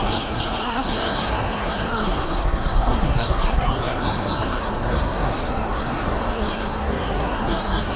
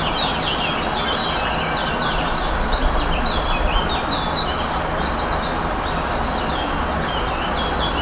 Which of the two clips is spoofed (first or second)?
first